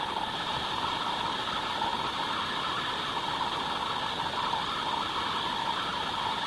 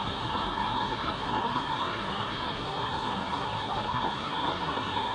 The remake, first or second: second